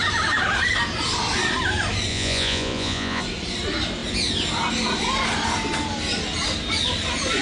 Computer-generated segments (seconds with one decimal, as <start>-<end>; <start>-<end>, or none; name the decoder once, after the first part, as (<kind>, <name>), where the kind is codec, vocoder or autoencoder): 2.1-3.2 (vocoder, Vocos)